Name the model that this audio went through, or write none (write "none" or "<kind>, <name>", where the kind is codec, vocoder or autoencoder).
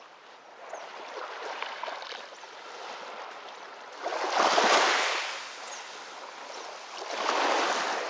none